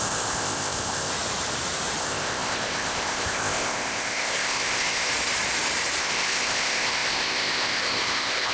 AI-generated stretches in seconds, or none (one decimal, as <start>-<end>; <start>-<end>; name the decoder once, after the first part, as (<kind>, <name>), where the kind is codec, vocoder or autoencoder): 0.0-1.1 (codec, ZipCodec); 2.0-5.1; 6.0-8.5